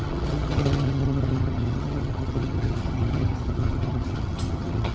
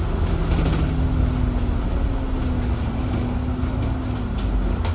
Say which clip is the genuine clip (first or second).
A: second